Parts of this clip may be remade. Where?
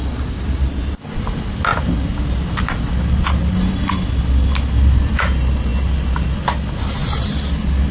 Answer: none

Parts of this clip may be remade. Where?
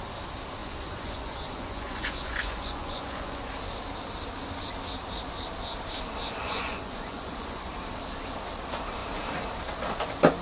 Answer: 0.6-3.5 (vocoder, Vocos); 6.4-7.7